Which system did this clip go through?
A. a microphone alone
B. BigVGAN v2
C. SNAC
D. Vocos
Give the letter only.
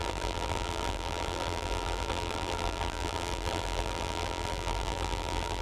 B